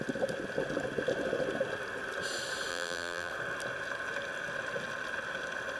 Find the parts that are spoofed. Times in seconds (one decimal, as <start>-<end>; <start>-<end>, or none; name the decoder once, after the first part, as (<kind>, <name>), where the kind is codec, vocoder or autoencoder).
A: 2.7-3.3 (vocoder, BigVGAN v2)